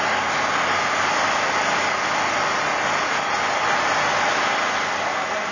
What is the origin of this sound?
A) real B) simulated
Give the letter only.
A